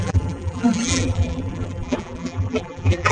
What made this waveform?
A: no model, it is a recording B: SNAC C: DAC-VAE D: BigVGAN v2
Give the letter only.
D